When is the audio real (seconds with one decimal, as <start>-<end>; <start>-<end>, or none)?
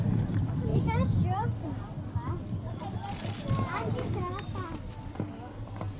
0.0-6.0